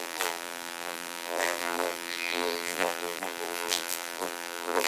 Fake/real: fake